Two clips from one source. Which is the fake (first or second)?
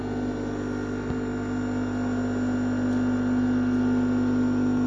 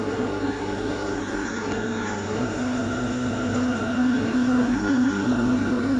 second